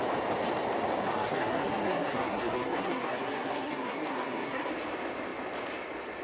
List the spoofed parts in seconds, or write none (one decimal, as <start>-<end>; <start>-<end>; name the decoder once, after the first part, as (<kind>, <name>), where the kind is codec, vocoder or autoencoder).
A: 1.1-4.7 (codec, SNAC)